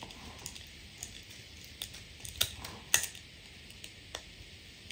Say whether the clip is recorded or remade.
recorded